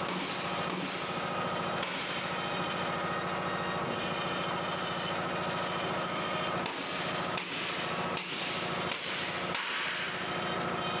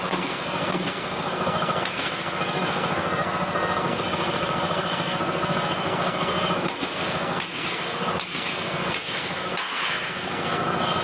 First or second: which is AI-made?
second